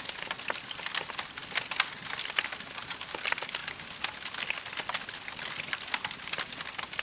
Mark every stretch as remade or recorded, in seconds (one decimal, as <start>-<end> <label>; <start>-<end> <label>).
0.0-7.0 recorded